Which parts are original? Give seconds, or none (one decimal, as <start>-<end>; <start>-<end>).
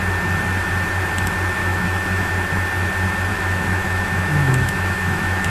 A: 0.0-1.6; 2.3-3.3